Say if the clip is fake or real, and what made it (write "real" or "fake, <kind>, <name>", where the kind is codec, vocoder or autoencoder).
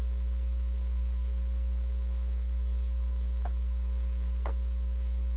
fake, codec, SNAC